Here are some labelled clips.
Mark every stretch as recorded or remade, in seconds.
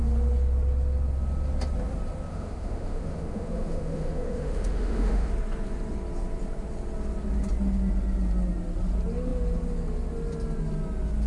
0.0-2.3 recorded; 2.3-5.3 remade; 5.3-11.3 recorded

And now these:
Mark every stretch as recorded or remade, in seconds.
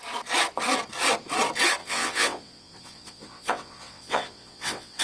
0.0-1.8 recorded; 1.8-5.0 remade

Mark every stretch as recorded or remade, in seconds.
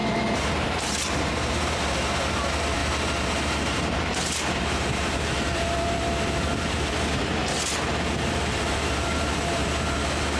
0.0-7.4 remade; 7.4-8.3 recorded; 8.3-10.4 remade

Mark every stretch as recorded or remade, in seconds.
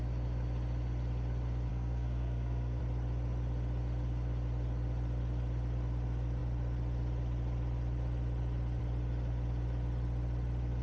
0.0-1.7 recorded; 1.7-2.8 remade; 2.8-10.8 recorded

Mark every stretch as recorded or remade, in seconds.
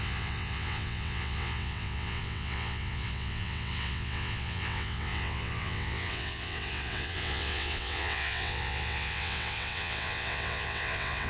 0.0-11.3 remade